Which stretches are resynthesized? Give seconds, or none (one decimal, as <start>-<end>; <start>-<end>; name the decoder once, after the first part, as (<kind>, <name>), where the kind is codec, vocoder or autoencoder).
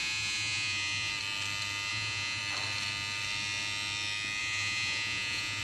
0.0-1.1 (vocoder, Vocos); 1.9-2.4; 4.4-5.6